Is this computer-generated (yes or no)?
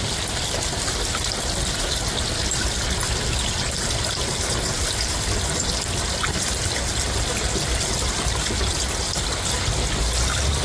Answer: no